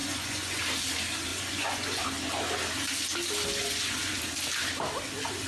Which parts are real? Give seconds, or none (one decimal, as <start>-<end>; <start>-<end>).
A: 0.6-1.3; 2.0-3.6; 4.2-5.5